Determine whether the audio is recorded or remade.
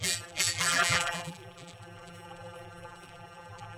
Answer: remade